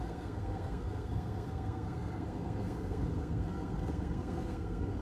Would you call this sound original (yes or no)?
no